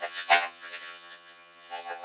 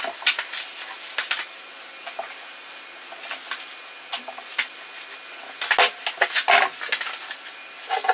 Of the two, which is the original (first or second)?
second